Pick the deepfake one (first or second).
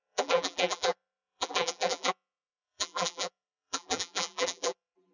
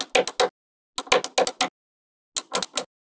first